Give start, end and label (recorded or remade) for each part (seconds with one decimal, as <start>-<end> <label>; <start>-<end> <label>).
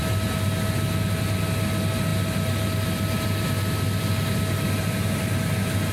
0.0-5.9 recorded